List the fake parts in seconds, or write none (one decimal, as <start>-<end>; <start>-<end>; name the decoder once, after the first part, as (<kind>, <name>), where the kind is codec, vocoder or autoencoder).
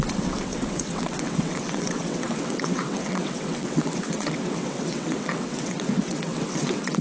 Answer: 0.0-7.0 (vocoder, WaveNeXt)